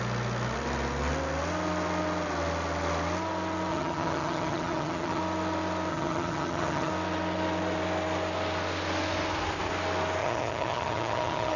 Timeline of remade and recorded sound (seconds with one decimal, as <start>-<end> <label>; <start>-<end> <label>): 0.0-3.7 recorded; 3.7-5.2 remade; 5.2-5.9 recorded; 5.9-6.9 remade; 6.9-10.2 recorded; 10.2-11.6 remade